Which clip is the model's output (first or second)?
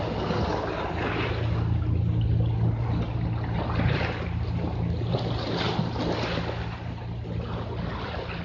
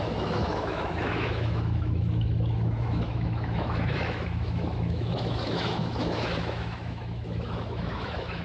second